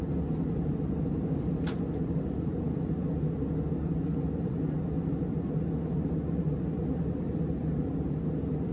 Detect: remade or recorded recorded